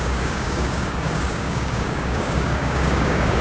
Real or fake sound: fake